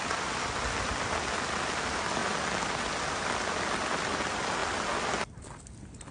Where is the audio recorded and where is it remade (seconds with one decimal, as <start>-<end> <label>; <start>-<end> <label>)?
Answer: 0.0-6.1 recorded